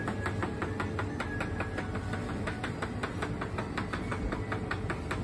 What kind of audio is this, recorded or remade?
recorded